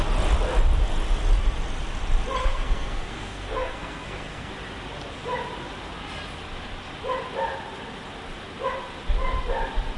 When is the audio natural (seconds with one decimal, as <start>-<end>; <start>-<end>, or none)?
0.0-2.4; 4.5-10.0